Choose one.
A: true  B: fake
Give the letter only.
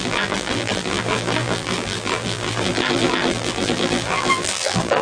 B